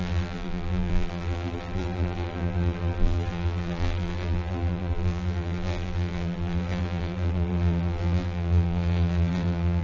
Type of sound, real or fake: fake